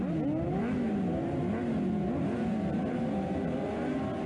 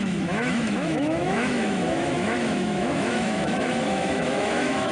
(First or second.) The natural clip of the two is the first